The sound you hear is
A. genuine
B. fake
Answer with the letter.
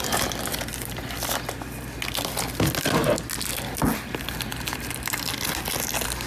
A